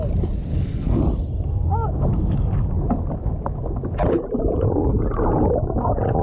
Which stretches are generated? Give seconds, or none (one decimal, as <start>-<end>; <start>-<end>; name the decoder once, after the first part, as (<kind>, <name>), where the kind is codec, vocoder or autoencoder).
0.5-1.0 (codec, SNAC)